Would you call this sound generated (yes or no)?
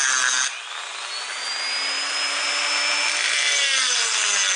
no